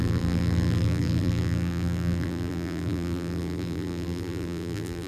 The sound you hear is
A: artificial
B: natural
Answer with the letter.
A